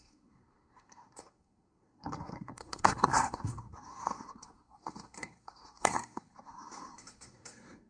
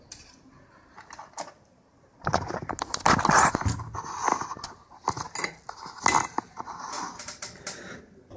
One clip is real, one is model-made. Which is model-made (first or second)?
first